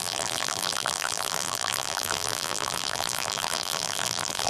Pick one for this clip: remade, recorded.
remade